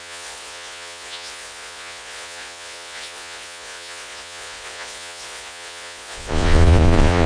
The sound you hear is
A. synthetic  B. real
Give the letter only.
A